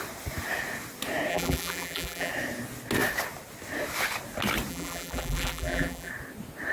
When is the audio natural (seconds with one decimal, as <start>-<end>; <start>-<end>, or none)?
0.0-1.3; 2.3-4.7; 6.1-6.7